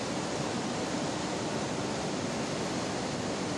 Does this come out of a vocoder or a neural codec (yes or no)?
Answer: no